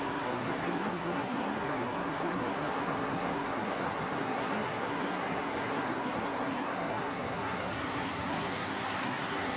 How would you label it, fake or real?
fake